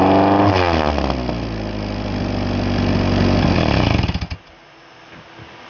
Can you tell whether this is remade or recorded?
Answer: recorded